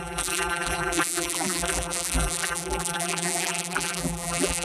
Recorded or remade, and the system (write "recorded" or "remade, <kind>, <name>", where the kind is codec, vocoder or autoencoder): remade, vocoder, BigVGAN v2